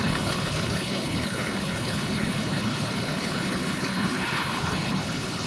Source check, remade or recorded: remade